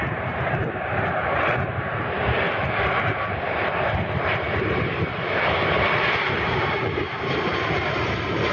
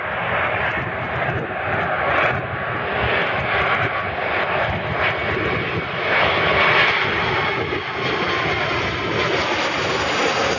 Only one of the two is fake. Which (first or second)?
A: first